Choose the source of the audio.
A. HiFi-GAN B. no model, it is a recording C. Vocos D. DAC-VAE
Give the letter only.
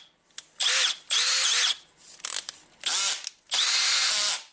B